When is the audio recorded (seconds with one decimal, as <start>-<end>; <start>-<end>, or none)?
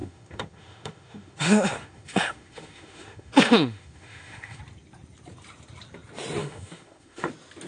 4.6-6.4; 7.3-7.7